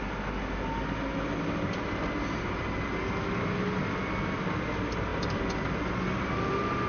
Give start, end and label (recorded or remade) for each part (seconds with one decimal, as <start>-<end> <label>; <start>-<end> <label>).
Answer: 0.0-6.9 recorded